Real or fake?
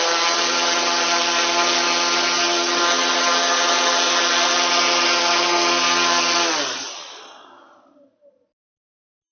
real